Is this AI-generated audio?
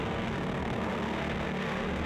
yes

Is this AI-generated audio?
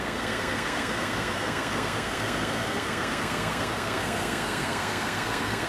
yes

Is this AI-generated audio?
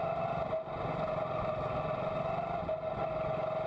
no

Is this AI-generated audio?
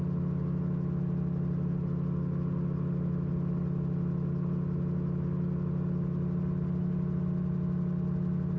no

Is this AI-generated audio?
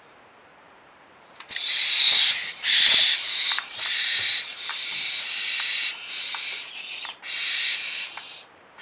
yes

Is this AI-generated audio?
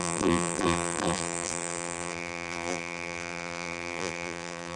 yes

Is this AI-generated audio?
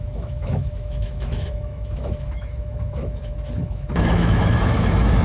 yes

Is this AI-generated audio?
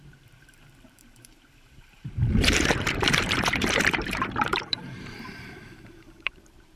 yes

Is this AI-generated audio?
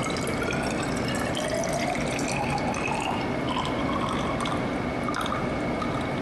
no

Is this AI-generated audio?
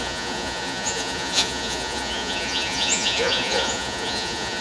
yes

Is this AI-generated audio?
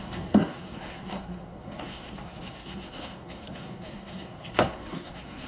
yes